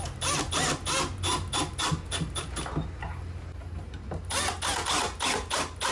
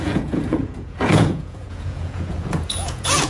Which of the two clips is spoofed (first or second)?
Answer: second